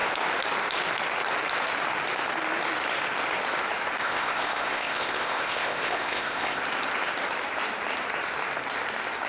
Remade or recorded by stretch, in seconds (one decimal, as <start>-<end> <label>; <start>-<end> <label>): 0.0-4.0 recorded; 4.0-6.6 remade; 6.6-9.3 recorded